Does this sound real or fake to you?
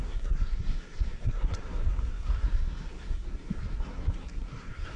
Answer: fake